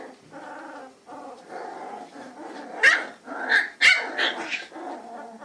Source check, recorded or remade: recorded